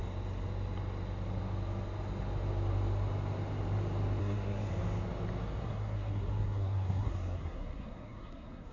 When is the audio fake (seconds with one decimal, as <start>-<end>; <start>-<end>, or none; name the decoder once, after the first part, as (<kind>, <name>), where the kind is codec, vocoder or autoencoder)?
4.2-4.7 (codec, SNAC); 5.6-8.7